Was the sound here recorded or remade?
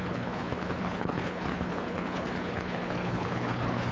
remade